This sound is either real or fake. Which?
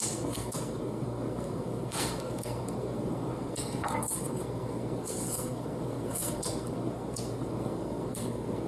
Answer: fake